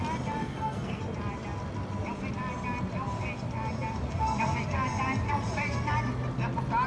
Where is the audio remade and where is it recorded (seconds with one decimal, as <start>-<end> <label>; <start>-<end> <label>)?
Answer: 0.0-0.4 recorded; 0.4-1.0 remade; 1.0-6.9 recorded